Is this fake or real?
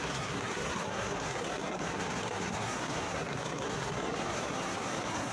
fake